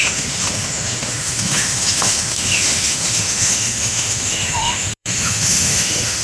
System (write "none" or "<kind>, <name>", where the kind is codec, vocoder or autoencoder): autoencoder, DAC-VAE